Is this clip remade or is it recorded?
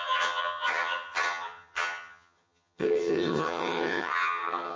remade